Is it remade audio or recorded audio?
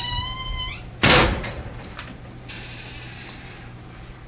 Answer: remade